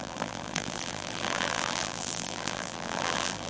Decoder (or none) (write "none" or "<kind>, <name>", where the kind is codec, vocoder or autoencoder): vocoder, BigVGAN v2